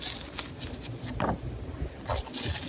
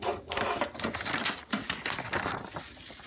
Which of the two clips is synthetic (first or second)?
first